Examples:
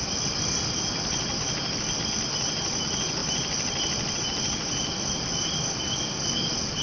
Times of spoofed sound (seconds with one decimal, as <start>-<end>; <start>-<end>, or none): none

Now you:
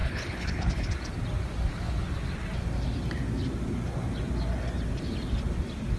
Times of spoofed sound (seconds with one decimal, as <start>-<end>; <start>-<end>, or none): 0.0-0.9

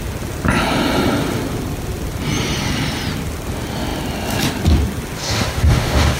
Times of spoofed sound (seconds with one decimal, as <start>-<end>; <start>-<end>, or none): 5.2-6.2